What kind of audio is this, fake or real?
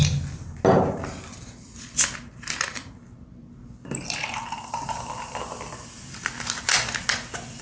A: real